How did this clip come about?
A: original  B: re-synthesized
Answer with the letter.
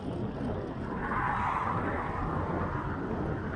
A